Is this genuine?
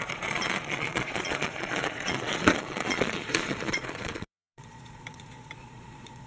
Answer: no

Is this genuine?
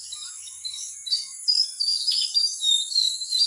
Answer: no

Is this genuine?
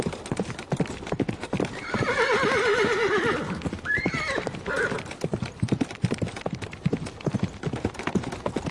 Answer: yes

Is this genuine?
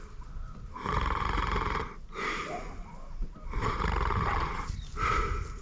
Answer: yes